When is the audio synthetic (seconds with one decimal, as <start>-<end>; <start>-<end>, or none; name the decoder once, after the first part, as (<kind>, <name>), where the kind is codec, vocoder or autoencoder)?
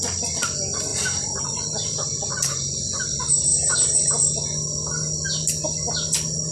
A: 0.9-1.4 (vocoder, BigVGAN v2); 3.5-4.1